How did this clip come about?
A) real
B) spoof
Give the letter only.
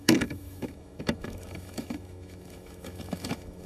B